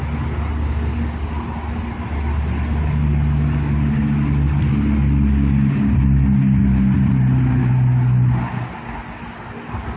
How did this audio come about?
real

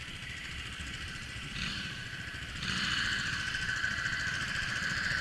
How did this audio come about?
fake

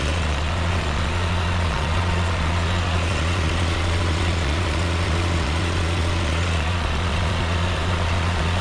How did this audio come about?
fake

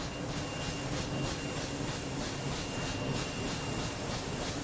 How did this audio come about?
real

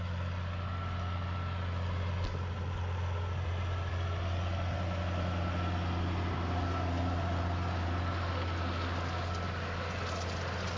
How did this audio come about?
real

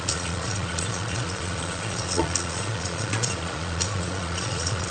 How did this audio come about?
fake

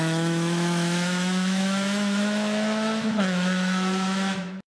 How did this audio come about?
fake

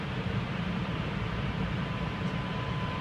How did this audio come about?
fake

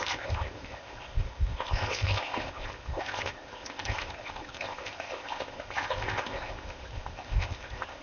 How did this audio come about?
fake